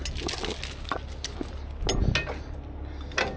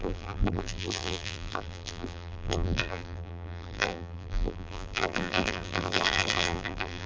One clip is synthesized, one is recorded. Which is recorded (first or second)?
first